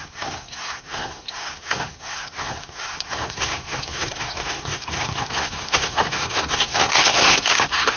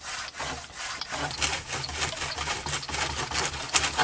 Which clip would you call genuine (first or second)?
second